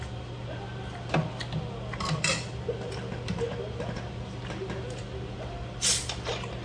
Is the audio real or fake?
real